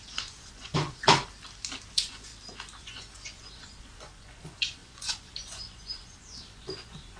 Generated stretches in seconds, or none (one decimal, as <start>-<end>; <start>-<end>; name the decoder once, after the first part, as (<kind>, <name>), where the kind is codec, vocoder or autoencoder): 0.0-1.0 (vocoder, Vocos); 1.9-2.3; 2.8-7.2